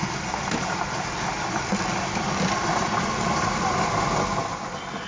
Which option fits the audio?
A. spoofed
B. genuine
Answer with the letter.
B